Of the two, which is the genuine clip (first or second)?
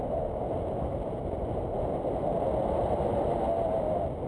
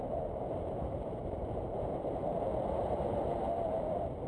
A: first